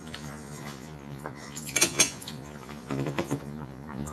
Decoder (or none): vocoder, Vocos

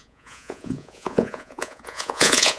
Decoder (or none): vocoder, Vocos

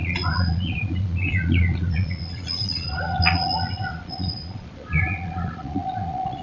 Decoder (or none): vocoder, Vocos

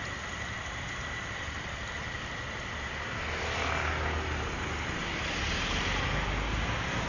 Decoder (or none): none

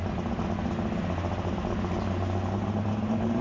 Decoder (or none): none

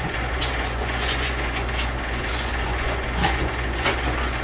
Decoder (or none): vocoder, Vocos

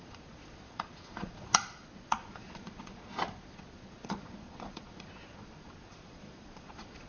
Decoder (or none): vocoder, Vocos